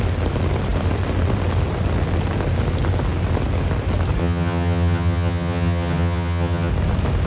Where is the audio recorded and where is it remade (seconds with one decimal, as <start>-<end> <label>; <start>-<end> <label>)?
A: 0.0-4.2 recorded; 4.2-6.7 remade; 6.7-7.3 recorded